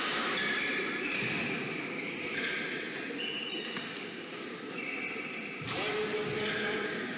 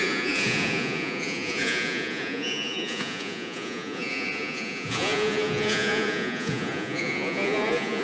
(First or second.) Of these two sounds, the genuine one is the first